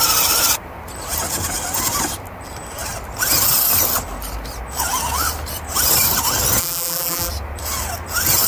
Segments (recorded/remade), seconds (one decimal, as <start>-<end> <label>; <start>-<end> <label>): 0.0-6.6 recorded; 6.6-7.3 remade; 7.3-8.5 recorded